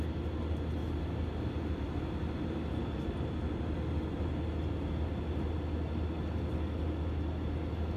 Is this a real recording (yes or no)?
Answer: yes